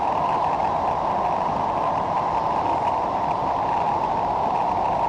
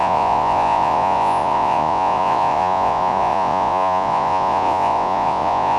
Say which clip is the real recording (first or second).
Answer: first